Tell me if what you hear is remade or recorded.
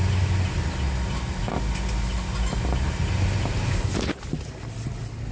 recorded